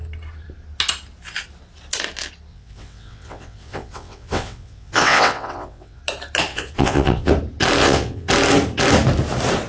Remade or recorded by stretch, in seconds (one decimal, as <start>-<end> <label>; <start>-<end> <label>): 0.0-2.5 recorded; 2.5-6.0 remade; 6.0-6.5 recorded; 6.5-7.3 remade; 7.3-7.8 recorded; 7.8-8.3 remade; 8.3-9.7 recorded